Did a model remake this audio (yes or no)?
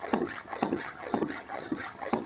yes